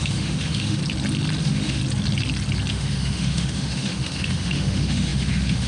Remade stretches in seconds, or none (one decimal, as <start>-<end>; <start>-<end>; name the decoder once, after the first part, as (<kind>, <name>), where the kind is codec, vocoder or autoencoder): 0.0-0.8 (autoencoder, DAC-VAE); 1.4-1.8; 2.7-5.7